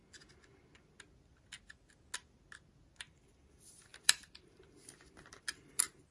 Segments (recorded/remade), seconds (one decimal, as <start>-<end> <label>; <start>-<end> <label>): 0.0-3.0 recorded; 3.0-6.1 remade